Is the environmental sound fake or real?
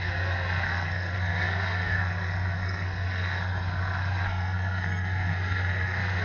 fake